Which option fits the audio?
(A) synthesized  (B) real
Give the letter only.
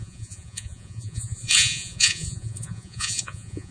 A